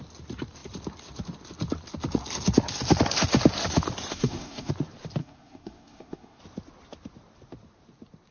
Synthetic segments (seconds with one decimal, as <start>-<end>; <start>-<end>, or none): 4.1-4.7; 5.2-6.4